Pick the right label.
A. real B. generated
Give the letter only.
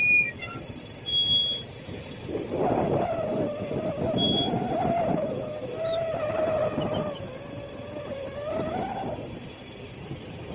A